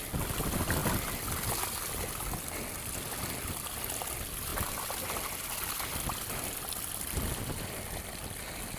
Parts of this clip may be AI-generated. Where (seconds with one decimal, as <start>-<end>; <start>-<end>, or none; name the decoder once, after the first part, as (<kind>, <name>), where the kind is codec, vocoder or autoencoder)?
none